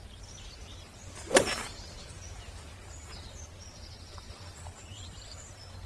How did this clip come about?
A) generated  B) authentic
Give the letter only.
A